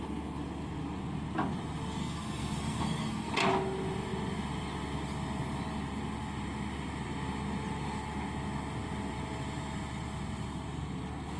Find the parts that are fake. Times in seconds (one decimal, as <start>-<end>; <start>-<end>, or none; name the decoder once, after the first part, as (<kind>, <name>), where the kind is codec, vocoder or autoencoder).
2.0-3.3 (codec, SNAC)